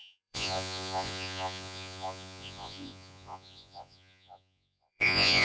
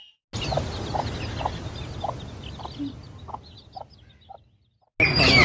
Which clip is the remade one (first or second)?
first